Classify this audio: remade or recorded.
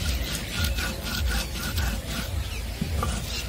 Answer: recorded